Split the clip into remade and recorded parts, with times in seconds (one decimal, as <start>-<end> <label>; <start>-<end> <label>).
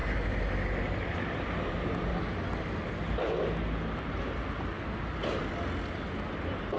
0.0-6.8 recorded